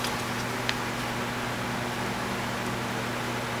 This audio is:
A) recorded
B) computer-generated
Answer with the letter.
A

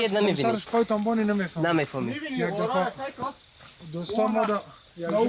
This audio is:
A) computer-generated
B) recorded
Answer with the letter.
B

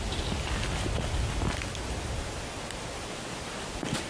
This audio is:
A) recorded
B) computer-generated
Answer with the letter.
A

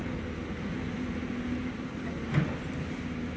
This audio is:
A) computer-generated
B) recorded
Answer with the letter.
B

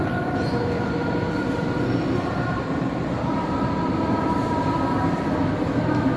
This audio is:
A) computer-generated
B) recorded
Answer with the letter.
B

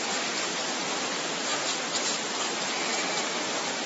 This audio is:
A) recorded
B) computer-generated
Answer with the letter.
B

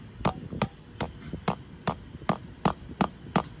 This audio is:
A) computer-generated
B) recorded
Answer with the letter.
B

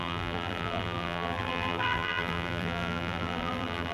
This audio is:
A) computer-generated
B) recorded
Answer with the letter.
A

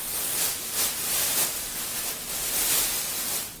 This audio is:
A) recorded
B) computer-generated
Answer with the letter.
A